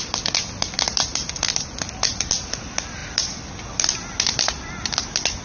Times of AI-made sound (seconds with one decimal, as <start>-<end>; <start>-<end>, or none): none